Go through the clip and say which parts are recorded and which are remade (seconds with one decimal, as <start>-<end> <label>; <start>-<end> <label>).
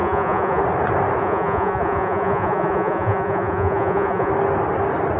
0.0-0.6 remade; 0.6-1.2 recorded; 1.2-4.3 remade; 4.3-5.2 recorded